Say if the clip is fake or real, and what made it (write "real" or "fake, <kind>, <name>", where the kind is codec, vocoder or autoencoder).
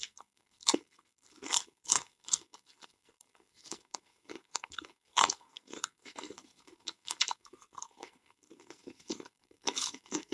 fake, codec, SNAC